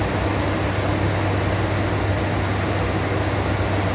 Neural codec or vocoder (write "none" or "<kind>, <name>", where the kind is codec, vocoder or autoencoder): none